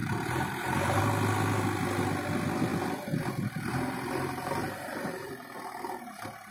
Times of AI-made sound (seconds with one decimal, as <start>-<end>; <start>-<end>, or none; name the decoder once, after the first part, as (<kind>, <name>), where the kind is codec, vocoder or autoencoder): 0.0-1.0 (vocoder, BigVGAN v2); 3.7-5.3